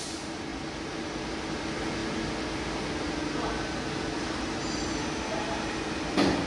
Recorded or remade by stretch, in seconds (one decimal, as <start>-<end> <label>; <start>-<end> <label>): 0.0-6.5 recorded